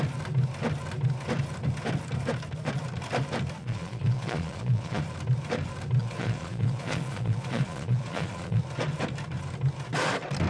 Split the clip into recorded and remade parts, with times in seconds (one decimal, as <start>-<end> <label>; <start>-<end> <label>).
0.0-3.6 recorded; 3.6-5.0 remade; 5.0-6.0 recorded; 6.0-8.6 remade; 8.6-10.5 recorded